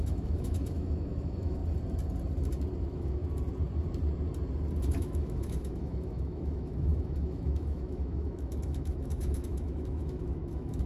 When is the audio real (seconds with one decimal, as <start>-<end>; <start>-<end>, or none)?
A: 1.6-2.8; 3.2-4.9